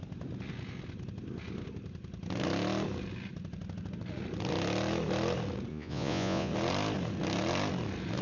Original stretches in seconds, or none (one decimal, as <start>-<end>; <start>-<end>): 0.0-5.7; 6.5-8.2